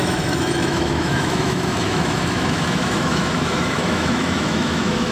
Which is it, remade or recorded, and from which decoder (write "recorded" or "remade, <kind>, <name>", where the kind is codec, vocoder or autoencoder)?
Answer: remade, autoencoder, DAC-VAE